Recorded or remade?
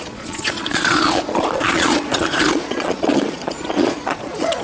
remade